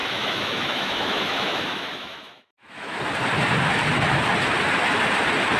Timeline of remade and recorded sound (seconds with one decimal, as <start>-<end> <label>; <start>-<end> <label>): 0.0-3.0 remade; 3.0-5.6 recorded